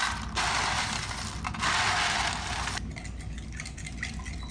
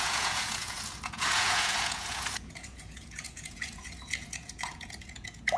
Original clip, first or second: first